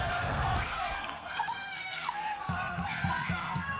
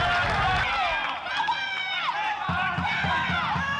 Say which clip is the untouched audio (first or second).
second